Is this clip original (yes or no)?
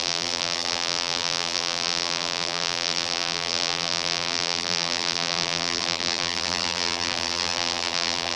no